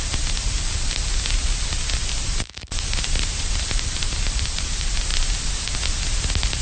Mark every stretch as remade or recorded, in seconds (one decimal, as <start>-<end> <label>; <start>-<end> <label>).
0.0-0.4 remade; 0.4-2.2 recorded; 2.2-5.1 remade; 5.1-6.6 recorded